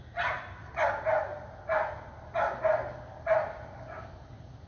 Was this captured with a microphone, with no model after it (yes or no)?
yes